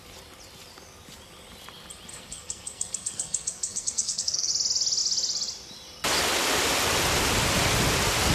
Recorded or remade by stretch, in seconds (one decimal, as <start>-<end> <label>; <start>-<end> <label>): 0.0-2.1 recorded; 2.1-4.5 remade; 4.5-8.3 recorded